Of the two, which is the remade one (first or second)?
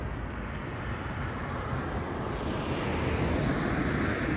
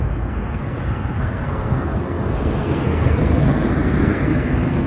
second